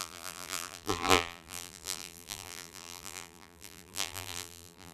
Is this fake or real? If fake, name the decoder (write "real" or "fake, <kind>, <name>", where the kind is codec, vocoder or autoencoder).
fake, vocoder, BigVGAN v2